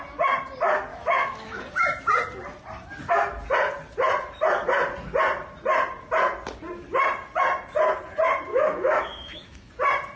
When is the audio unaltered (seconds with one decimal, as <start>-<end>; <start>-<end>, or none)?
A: 0.0-0.9; 1.6-8.5; 9.7-10.2